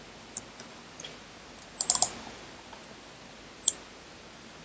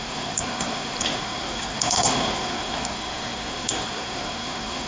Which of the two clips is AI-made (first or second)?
second